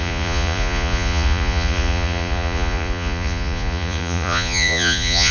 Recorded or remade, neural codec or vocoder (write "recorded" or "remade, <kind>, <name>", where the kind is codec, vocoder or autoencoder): remade, vocoder, Vocos